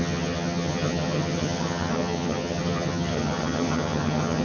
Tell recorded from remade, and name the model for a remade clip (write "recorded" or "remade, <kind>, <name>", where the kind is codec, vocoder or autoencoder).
remade, vocoder, HiFi-GAN